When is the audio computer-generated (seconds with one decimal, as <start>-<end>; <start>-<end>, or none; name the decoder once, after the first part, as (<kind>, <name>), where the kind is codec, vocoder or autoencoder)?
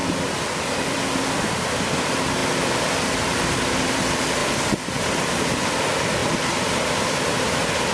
0.0-4.4 (vocoder, BigVGAN v2); 5.3-6.2